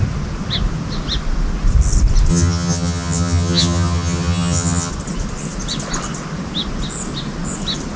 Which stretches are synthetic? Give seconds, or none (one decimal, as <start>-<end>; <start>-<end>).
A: 2.3-4.9